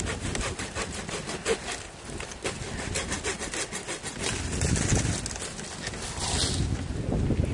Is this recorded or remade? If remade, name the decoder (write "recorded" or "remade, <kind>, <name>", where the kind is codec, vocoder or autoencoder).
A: recorded